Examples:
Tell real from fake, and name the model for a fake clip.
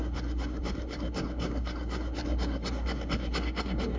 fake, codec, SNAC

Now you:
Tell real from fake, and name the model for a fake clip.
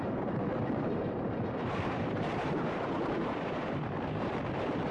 fake, vocoder, BigVGAN v2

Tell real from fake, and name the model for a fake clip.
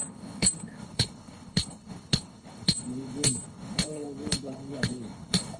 fake, codec, HILCodec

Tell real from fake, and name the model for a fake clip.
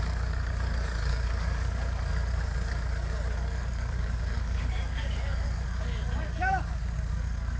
fake, codec, DAC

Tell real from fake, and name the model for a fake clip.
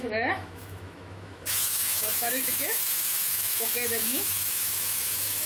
fake, autoencoder, DAC-VAE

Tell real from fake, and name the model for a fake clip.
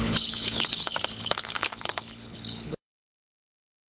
fake, codec, HILCodec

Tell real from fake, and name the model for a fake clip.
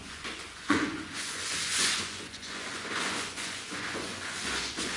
fake, vocoder, Vocos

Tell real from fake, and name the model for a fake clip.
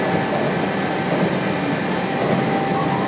real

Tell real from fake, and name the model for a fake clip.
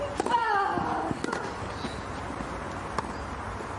real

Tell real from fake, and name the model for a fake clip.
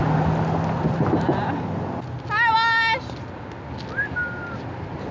real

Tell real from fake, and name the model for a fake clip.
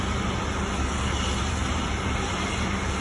fake, vocoder, BigVGAN v2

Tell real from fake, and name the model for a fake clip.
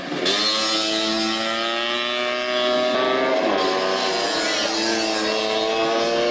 real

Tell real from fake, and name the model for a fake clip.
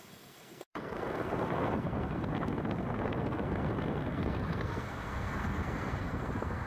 fake, codec, SNAC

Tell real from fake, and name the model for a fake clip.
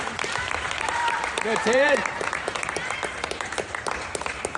fake, vocoder, BigVGAN v2